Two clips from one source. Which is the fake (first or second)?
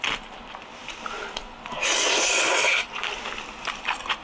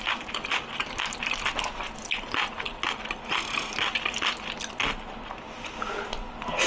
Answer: first